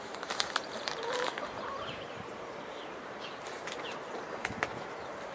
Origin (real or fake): fake